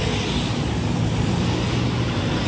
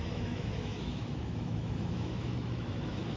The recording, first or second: first